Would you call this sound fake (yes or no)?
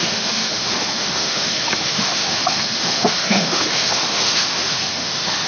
yes